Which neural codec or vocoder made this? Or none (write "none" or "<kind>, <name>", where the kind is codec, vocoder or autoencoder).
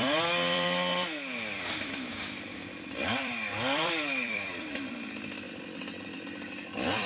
vocoder, BigVGAN v2